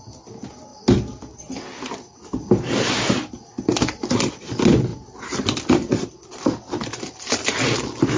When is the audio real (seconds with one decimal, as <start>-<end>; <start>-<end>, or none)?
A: 0.0-8.2

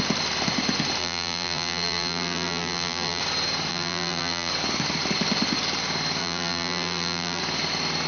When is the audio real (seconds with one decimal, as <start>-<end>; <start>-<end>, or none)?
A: 0.0-1.0; 3.2-3.7; 4.5-6.2; 7.4-8.1